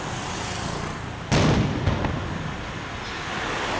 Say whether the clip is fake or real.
real